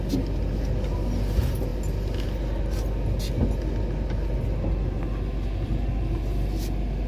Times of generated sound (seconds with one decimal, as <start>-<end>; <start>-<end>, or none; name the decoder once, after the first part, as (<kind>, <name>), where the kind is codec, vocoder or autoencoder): none